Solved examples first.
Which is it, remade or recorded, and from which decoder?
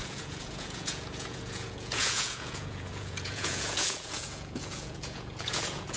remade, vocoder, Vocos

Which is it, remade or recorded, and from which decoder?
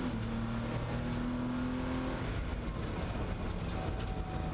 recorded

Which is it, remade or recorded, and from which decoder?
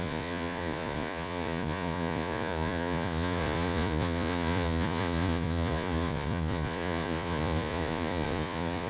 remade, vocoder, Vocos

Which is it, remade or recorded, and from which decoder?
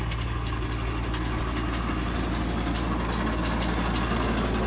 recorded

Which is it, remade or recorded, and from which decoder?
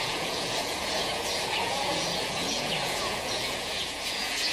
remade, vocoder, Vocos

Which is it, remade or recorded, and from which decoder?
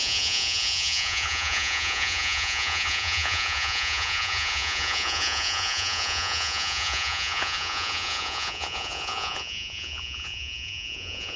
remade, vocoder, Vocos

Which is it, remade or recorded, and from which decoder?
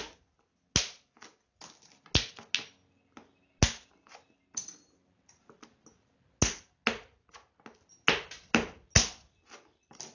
recorded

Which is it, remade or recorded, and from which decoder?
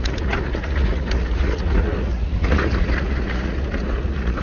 remade, vocoder, Vocos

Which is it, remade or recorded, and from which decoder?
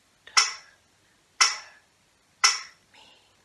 recorded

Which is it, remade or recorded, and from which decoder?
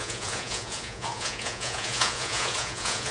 remade, vocoder, Vocos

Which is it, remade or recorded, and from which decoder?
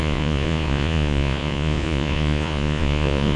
remade, vocoder, Vocos